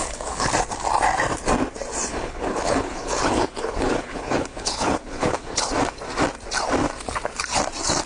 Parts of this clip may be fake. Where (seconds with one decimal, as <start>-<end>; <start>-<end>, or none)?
0.0-0.5; 2.1-5.7